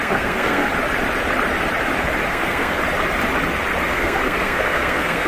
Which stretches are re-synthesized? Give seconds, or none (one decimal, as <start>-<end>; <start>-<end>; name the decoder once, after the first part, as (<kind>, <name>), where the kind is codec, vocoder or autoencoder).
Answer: 0.0-0.7 (codec, SNAC); 2.3-2.8; 3.9-5.3